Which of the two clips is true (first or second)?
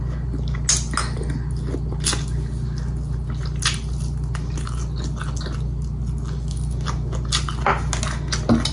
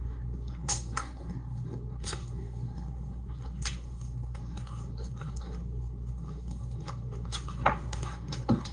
first